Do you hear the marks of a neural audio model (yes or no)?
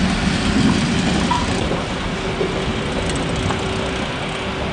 no